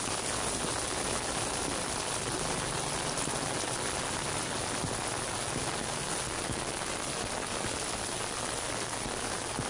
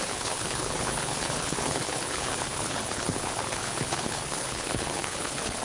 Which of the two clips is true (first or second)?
first